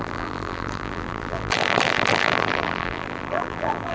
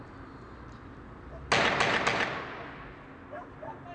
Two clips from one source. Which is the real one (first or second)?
second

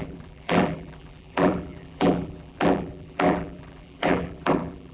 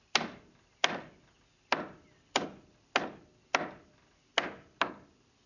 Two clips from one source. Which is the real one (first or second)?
second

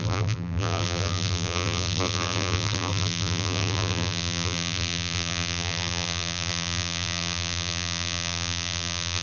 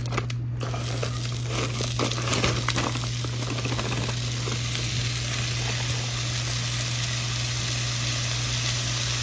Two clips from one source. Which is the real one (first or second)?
second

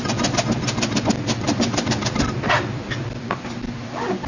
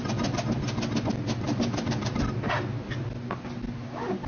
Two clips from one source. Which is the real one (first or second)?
second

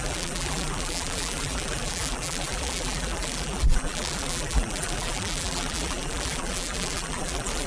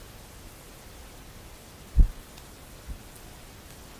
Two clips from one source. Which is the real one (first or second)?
second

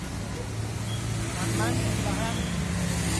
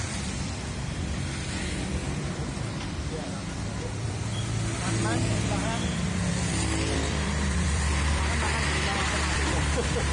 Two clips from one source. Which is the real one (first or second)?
first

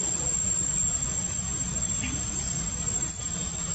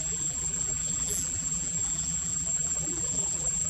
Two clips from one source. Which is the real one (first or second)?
first